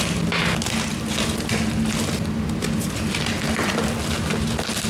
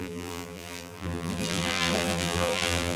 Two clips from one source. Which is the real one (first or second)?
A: first